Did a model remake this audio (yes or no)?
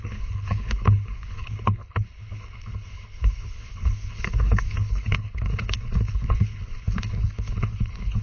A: yes